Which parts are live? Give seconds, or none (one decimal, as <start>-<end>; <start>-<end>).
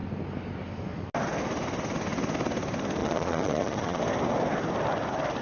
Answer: 0.0-3.0; 4.0-5.4